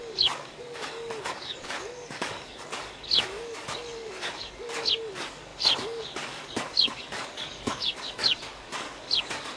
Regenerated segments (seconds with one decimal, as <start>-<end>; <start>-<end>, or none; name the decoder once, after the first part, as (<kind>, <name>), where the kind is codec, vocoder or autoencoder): 0.0-9.6 (codec, DAC)